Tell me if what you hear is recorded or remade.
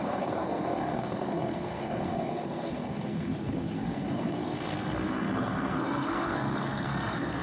remade